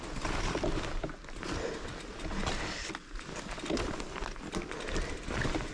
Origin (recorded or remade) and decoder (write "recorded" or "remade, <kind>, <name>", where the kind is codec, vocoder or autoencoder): recorded